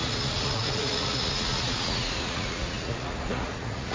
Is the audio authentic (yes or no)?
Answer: no